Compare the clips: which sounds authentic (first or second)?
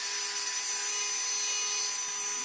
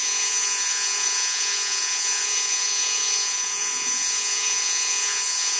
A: first